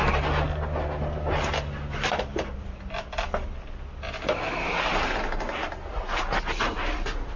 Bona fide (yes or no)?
yes